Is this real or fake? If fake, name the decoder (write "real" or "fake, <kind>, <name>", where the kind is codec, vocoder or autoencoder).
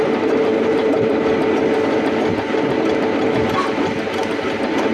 real